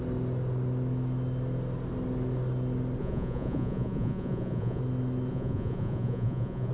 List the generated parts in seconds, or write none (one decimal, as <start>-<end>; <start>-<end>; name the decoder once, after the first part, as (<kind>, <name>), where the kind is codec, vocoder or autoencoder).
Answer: 3.0-4.8 (vocoder, Vocos); 5.3-6.7